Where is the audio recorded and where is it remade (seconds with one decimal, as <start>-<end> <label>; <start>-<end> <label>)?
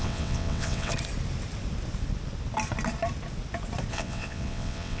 0.0-0.9 remade; 0.9-3.9 recorded; 3.9-5.0 remade